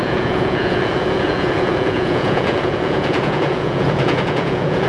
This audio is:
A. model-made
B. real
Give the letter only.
A